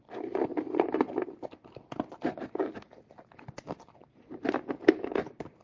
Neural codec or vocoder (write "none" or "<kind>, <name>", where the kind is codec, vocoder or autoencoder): none